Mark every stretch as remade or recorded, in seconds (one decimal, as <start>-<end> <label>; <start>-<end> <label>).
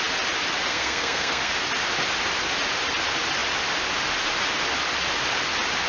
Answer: 0.0-0.7 recorded; 0.7-1.5 remade; 1.5-5.9 recorded